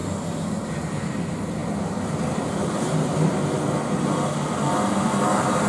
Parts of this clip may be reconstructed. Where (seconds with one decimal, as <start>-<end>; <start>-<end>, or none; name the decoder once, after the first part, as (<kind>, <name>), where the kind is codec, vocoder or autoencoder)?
none